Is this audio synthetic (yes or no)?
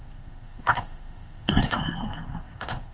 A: yes